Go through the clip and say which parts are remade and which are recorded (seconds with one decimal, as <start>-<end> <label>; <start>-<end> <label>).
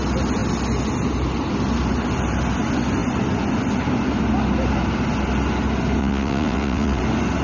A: 0.0-6.0 recorded; 6.0-7.0 remade; 7.0-7.4 recorded